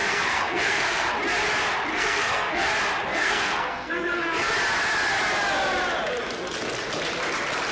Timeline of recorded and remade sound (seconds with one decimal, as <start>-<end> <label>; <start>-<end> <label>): 0.0-1.1 remade; 1.1-1.9 recorded; 1.9-2.7 remade; 2.7-3.1 recorded; 3.1-4.5 remade; 4.5-7.7 recorded